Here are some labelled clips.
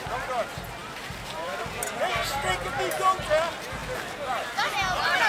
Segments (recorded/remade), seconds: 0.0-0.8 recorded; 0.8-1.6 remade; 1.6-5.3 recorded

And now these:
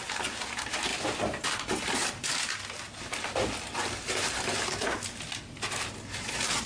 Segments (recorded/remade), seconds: 0.0-6.7 recorded

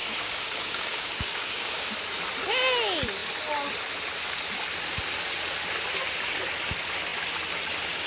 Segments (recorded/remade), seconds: 0.0-1.9 remade; 1.9-8.1 recorded